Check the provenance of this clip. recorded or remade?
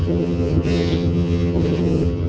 remade